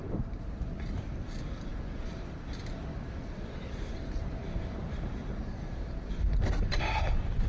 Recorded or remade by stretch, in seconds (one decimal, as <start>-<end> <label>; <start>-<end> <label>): 0.0-0.6 remade; 0.6-7.5 recorded